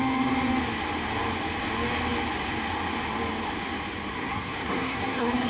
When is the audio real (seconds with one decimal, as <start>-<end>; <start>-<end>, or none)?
0.0-4.1